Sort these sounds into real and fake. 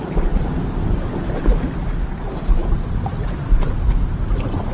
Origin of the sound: real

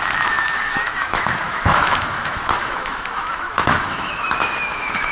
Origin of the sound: fake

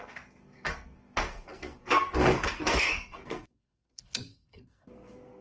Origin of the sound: fake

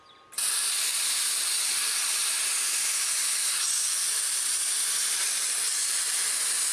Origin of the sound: real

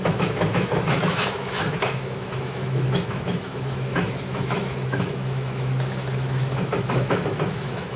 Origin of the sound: fake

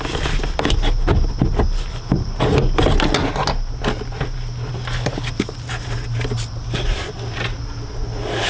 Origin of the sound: real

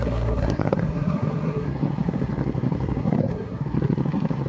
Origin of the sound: fake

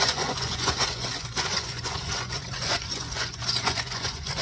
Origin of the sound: fake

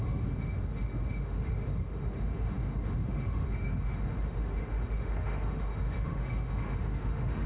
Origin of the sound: fake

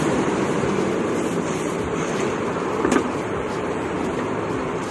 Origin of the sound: fake